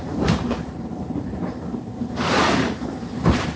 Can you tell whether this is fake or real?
fake